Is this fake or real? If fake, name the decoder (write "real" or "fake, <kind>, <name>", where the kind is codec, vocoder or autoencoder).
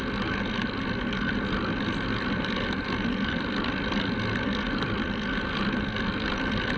real